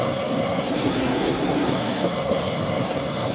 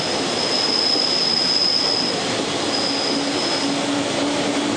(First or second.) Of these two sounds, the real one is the second